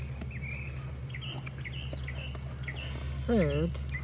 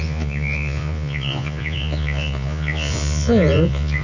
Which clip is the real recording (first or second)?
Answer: first